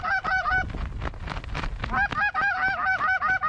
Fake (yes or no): no